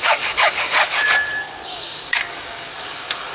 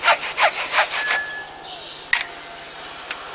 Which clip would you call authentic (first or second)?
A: second